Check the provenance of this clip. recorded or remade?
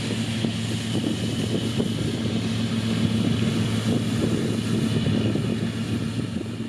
recorded